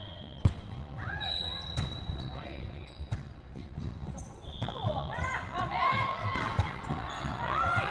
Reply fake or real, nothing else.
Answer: fake